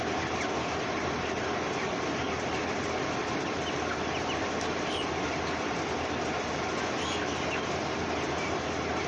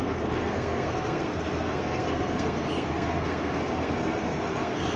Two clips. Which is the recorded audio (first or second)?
first